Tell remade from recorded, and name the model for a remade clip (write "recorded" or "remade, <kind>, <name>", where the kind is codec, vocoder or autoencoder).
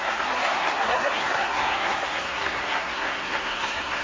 remade, codec, SNAC